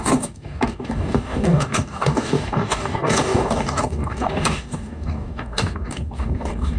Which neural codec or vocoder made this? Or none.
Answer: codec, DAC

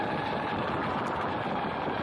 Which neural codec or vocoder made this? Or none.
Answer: none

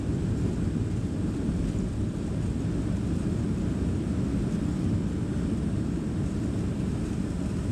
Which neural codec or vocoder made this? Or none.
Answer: none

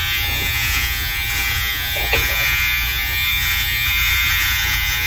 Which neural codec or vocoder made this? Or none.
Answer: vocoder, Vocos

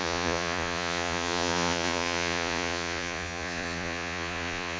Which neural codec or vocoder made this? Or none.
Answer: vocoder, Vocos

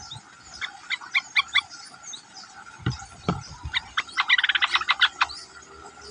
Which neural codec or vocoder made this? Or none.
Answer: none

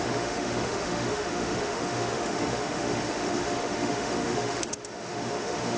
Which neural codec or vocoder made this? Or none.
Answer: autoencoder, DAC-VAE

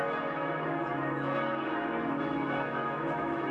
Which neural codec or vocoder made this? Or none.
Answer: autoencoder, DAC-VAE